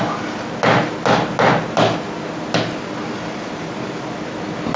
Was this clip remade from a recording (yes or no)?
no